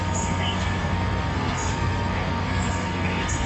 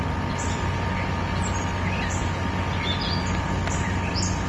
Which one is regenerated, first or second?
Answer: first